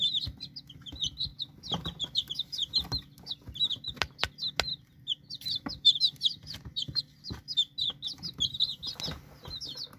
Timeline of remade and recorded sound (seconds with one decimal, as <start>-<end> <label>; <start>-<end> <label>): 0.0-4.7 recorded; 4.7-7.0 remade; 7.0-10.0 recorded